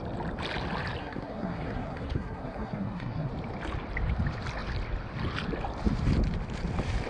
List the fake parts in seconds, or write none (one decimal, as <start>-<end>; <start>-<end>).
1.0-3.3